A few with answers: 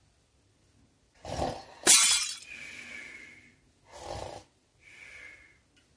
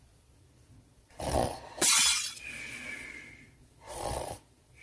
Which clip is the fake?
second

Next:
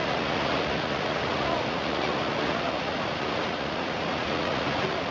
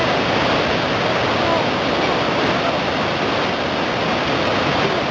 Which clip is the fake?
first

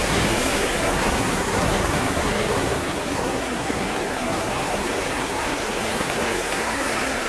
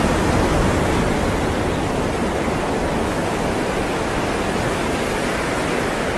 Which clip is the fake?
first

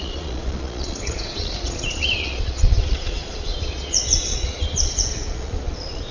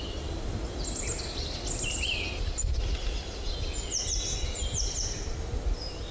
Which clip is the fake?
first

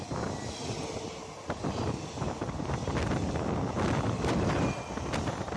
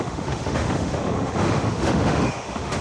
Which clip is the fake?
second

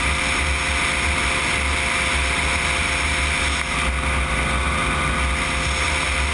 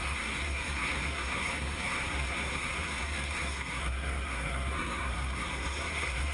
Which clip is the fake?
second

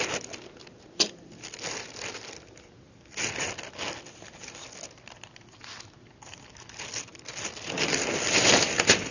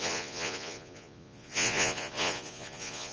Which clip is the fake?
second